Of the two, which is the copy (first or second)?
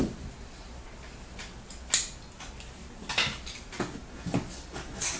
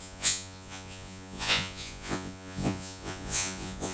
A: second